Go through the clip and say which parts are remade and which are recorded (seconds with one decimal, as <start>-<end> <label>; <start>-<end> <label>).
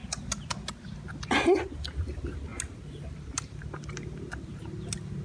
0.0-5.2 recorded